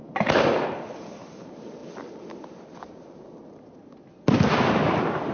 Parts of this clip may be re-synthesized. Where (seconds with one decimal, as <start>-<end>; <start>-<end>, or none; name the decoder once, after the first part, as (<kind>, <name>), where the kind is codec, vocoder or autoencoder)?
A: none